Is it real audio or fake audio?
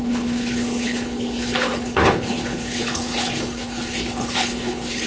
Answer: fake